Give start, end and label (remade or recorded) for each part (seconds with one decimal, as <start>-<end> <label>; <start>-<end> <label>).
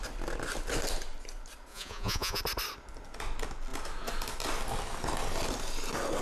0.0-1.7 recorded; 1.7-2.4 remade; 2.4-6.2 recorded